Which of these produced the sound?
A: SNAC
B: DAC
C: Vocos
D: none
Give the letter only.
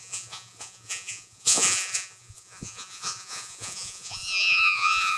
C